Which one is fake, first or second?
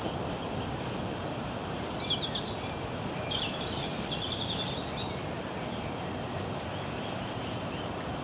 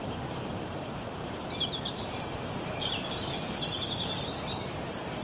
second